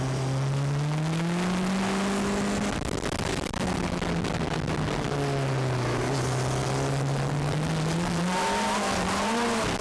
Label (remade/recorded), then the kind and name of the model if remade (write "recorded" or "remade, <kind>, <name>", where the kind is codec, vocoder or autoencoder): recorded